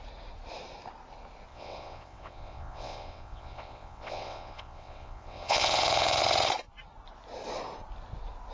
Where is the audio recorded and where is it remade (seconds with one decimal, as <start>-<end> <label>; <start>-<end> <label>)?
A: 0.0-1.5 recorded; 1.5-6.2 remade; 6.2-8.5 recorded